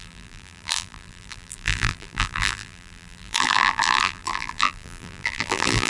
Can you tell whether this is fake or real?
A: fake